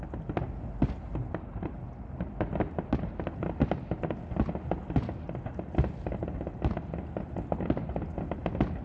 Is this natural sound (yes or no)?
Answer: yes